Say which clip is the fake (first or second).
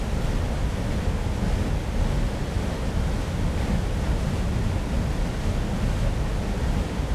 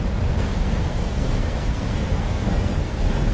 second